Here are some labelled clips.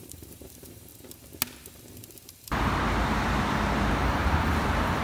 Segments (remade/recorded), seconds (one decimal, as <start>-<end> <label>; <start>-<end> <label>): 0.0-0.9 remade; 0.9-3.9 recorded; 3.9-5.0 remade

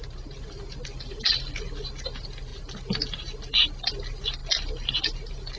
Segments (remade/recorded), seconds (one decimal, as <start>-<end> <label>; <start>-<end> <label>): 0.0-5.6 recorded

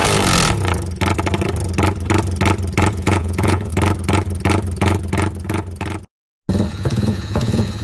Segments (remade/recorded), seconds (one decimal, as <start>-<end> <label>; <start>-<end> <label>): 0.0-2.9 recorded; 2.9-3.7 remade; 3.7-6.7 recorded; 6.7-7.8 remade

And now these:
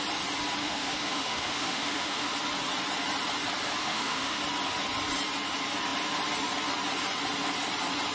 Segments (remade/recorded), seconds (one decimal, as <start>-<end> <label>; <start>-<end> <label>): 0.0-0.6 recorded; 0.6-2.3 remade; 2.3-3.8 recorded; 3.8-4.4 remade; 4.4-8.1 recorded

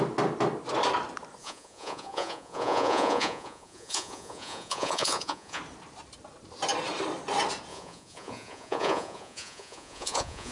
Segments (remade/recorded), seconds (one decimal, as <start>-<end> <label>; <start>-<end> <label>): 0.0-1.4 recorded; 1.4-5.6 remade; 5.6-7.7 recorded; 7.7-10.5 remade

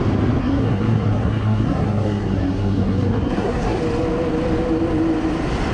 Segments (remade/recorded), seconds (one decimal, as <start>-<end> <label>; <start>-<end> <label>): 0.0-0.4 recorded; 0.4-3.8 remade; 3.8-5.7 recorded

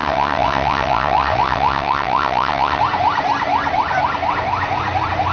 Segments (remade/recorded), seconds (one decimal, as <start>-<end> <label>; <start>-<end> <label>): 0.0-2.8 remade; 2.8-5.3 recorded

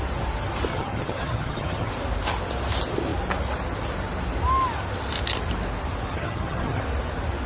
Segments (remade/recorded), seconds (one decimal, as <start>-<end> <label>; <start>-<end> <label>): 0.0-0.7 recorded; 0.7-1.9 remade; 1.9-6.1 recorded; 6.1-6.8 remade; 6.8-7.5 recorded